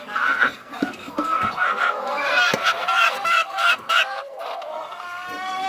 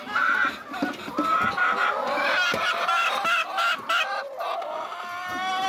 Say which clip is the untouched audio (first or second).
second